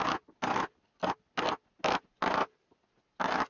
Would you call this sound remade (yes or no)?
no